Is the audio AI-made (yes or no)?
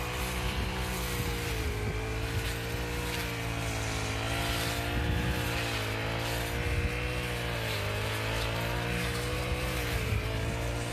no